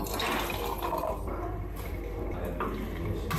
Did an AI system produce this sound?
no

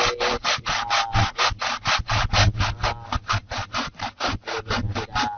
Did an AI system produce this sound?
no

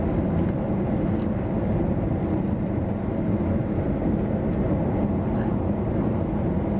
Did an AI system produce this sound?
no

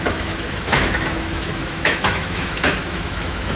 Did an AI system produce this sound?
yes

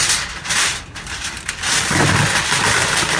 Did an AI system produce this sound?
no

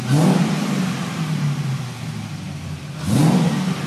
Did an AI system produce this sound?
no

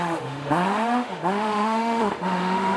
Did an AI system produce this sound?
yes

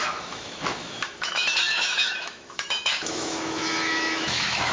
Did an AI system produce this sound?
yes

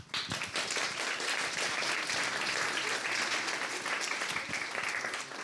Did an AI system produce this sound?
no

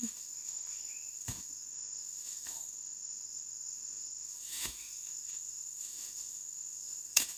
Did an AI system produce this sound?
yes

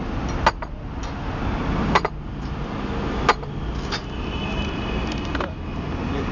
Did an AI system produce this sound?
no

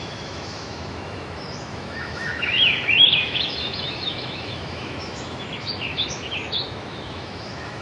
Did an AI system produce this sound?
yes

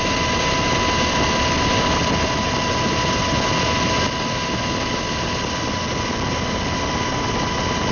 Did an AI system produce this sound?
no